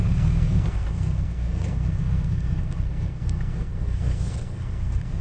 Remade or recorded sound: remade